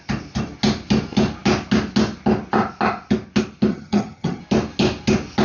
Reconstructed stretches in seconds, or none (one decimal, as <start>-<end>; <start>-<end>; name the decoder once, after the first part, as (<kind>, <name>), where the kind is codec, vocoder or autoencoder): 3.7-4.4 (vocoder, HiFi-GAN)